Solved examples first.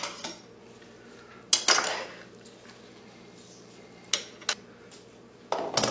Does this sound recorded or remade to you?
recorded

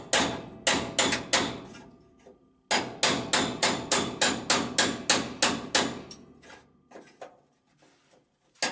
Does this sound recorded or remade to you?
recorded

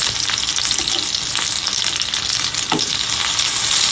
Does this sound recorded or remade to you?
recorded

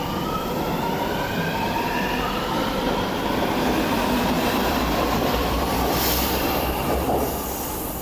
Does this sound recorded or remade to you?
remade